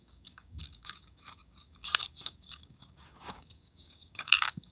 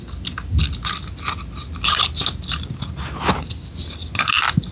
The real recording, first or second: second